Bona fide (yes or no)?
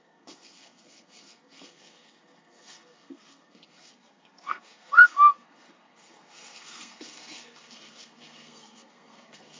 no